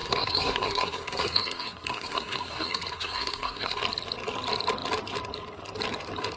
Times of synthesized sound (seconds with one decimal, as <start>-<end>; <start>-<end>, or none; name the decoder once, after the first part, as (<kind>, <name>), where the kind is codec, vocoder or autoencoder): 0.0-3.8 (codec, SNAC)